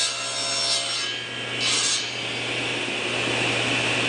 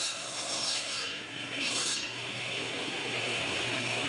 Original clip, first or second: first